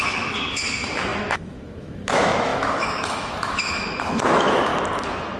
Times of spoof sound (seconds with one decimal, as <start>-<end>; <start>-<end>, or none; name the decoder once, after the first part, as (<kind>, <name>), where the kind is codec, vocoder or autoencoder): 0.0-4.7 (autoencoder, DAC-VAE)